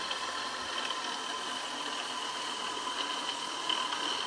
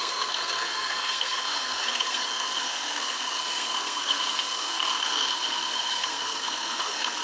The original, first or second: first